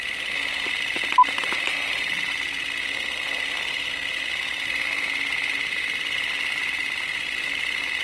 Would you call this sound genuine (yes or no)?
yes